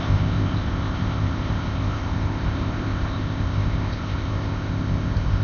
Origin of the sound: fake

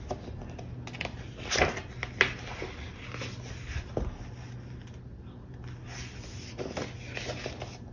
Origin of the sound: real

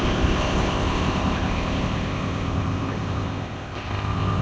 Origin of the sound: fake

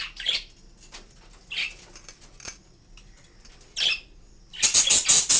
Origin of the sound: real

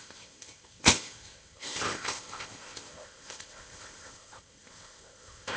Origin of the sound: fake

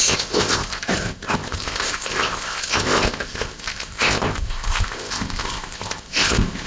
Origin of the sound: fake